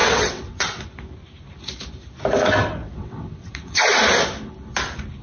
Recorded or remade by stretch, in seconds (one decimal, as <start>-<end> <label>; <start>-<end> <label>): 0.0-0.8 remade; 0.8-2.8 recorded; 2.8-3.8 remade; 3.8-5.2 recorded